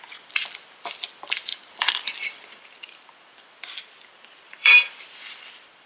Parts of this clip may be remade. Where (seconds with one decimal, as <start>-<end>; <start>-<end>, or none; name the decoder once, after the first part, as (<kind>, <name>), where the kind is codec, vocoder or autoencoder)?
0.0-5.9 (vocoder, BigVGAN v2)